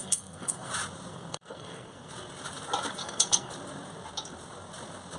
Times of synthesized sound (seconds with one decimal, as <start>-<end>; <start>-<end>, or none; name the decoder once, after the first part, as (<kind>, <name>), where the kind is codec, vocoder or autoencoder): 0.0-0.7 (codec, SNAC); 1.1-2.1; 3.0-3.5